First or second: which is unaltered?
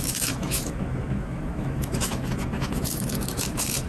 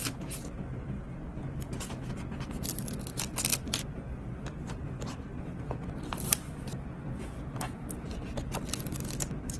second